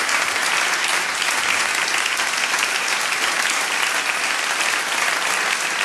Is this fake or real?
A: real